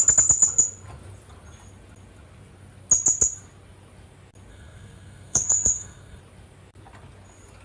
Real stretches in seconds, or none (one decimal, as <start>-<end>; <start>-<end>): 0.0-4.5; 6.2-7.6